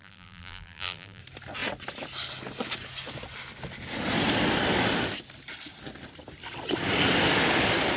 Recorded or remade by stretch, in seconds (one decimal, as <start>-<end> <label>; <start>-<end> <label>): 0.0-1.2 remade; 1.2-8.0 recorded